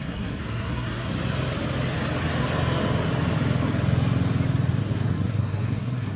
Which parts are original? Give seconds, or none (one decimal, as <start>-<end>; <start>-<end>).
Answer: 1.1-4.8

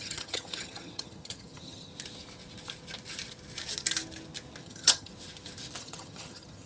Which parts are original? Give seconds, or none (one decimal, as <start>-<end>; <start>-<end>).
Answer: 1.9-4.6; 5.1-5.8

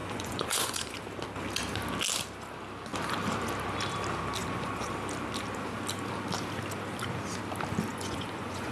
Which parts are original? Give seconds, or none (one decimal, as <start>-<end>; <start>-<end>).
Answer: 0.9-4.4; 4.9-7.9

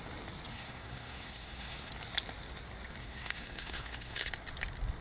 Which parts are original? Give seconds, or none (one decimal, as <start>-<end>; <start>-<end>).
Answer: 0.0-0.5; 1.9-3.0; 4.3-5.0

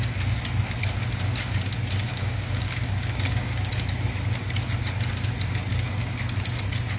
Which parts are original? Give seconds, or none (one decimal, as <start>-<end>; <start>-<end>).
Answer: 0.0-2.1; 3.7-5.7; 6.2-7.0

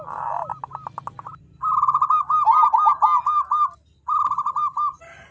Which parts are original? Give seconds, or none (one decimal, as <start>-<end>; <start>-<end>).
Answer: 0.0-5.3

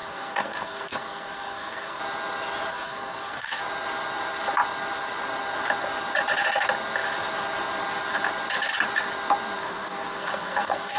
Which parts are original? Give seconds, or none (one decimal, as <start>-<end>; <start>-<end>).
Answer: 2.0-2.7; 3.6-9.6

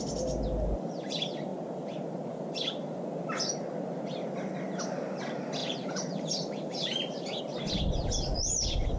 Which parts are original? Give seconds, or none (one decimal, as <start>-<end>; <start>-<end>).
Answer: 0.0-5.6; 7.4-9.0